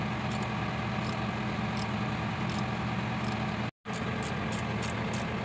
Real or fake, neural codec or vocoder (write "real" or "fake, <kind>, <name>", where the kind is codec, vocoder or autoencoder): real